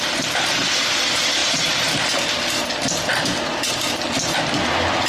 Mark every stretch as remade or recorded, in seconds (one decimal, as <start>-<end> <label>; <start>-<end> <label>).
0.0-5.1 recorded